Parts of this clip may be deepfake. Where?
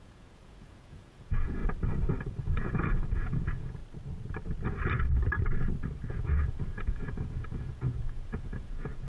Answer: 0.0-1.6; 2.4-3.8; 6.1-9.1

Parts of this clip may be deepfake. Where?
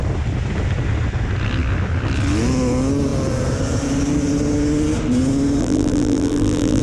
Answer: 5.6-6.8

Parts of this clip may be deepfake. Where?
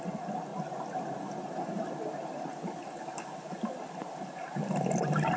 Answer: none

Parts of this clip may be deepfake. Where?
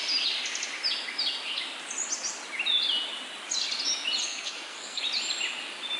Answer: 4.2-5.0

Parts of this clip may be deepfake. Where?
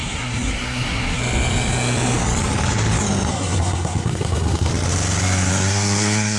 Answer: 0.0-1.2; 3.3-4.7; 5.5-6.4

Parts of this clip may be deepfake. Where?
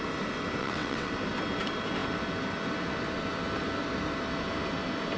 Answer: 0.6-1.1